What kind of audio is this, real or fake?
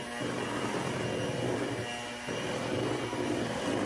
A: real